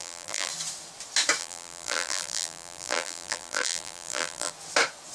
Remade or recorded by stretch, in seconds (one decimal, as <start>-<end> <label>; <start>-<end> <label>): 0.0-0.5 remade; 0.5-1.4 recorded; 1.4-4.5 remade; 4.5-5.1 recorded